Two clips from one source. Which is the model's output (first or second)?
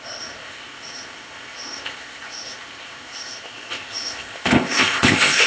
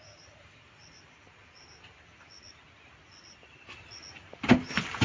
first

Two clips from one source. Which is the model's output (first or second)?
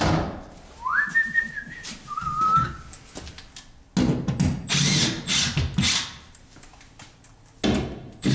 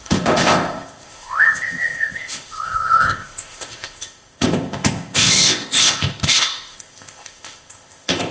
second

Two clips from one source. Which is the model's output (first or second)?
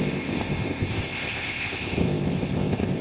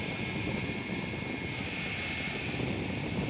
first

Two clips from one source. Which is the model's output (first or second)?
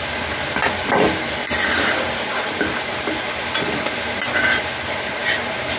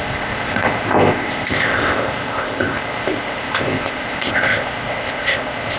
second